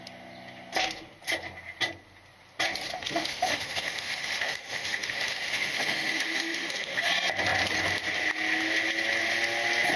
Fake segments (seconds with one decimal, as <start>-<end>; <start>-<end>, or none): 2.9-7.1